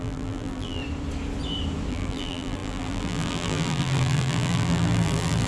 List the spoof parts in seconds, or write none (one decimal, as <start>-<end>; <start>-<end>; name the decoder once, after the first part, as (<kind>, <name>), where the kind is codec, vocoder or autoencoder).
0.0-0.8 (vocoder, BigVGAN v2); 1.9-5.5